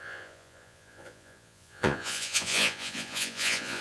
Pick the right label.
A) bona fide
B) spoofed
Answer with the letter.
B